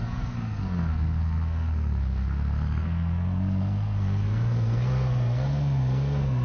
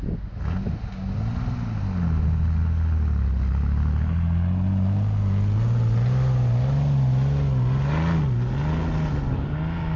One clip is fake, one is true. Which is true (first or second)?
second